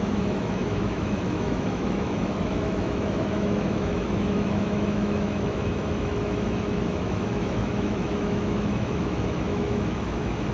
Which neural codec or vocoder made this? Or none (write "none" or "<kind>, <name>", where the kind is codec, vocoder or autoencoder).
autoencoder, DAC-VAE